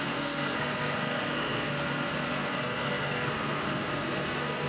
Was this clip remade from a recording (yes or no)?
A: yes